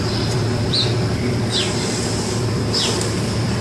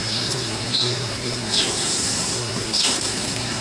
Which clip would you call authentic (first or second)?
first